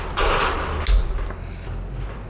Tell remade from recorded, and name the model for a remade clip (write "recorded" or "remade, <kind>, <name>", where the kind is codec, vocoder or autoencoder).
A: recorded